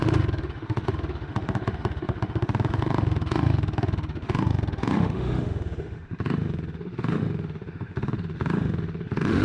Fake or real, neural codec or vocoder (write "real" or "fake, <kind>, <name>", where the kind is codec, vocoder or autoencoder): fake, autoencoder, DAC-VAE